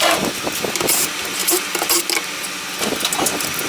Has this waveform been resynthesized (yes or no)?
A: no